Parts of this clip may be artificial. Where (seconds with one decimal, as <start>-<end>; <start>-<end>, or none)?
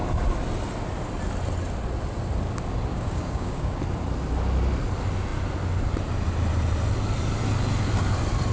2.9-3.8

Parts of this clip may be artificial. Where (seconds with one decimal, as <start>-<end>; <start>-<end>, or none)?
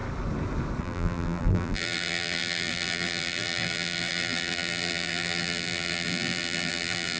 0.8-7.2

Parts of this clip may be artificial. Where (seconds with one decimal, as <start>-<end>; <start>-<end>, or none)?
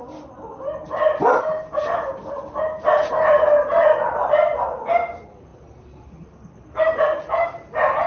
none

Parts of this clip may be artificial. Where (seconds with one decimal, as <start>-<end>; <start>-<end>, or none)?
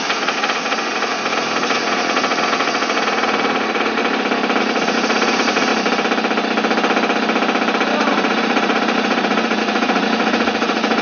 0.0-4.0; 4.6-5.7; 8.1-11.0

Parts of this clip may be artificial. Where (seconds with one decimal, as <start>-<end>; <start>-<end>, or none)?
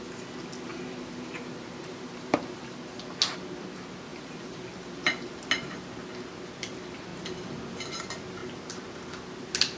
0.7-2.8; 4.1-5.4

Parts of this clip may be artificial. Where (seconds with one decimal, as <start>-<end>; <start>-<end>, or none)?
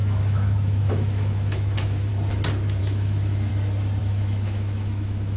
0.0-2.1; 2.8-3.5; 4.0-5.4